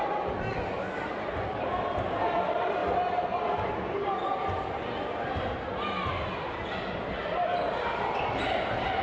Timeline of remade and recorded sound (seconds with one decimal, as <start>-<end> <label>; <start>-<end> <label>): 0.0-9.0 recorded